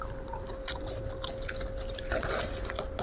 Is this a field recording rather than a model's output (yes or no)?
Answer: yes